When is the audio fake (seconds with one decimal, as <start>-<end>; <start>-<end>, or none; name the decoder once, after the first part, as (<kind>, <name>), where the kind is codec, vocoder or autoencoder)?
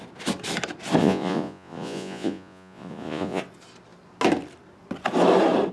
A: 1.0-3.4 (vocoder, Vocos)